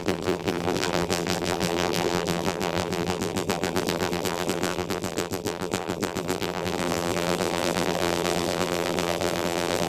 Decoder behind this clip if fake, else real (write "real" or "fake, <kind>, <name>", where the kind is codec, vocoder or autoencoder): fake, vocoder, BigVGAN v2